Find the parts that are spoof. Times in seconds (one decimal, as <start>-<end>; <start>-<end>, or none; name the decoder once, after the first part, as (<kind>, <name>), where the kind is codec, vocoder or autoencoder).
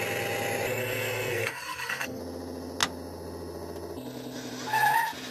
0.8-2.2 (codec, SNAC)